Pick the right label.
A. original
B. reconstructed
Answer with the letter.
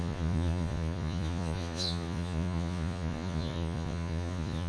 B